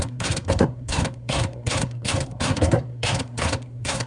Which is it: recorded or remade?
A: remade